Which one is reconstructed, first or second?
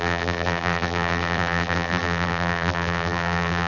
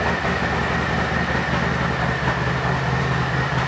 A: first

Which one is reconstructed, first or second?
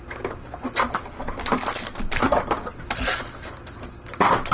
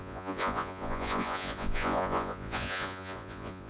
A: second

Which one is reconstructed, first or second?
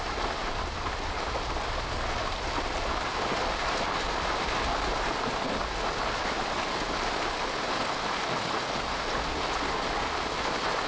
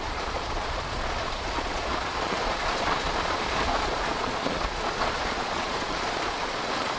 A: second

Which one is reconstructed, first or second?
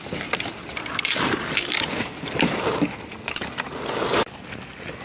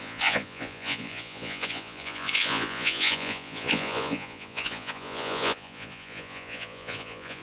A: second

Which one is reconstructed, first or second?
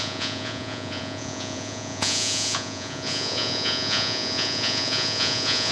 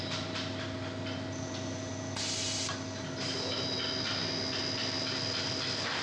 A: first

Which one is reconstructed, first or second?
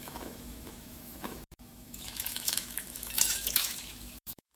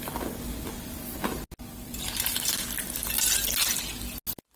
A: first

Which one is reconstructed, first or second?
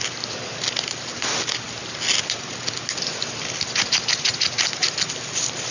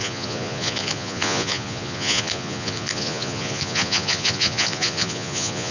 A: second